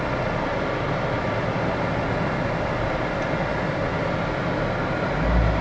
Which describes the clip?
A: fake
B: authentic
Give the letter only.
B